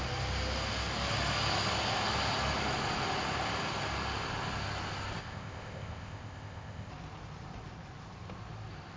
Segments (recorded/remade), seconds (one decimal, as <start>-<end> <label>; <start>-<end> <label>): 0.0-5.2 recorded; 5.2-6.9 remade; 6.9-9.0 recorded